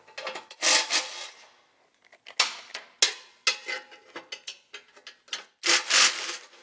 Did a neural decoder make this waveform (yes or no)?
no